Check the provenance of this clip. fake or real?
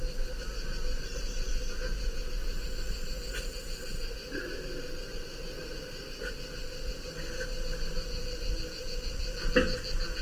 real